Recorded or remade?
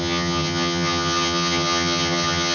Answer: remade